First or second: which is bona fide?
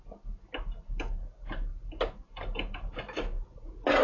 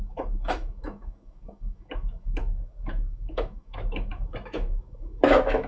first